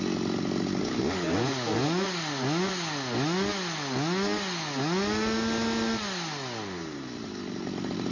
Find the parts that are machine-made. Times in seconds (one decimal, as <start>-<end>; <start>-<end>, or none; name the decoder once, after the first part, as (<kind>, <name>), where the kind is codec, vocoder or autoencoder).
6.8-8.1 (vocoder, BigVGAN v2)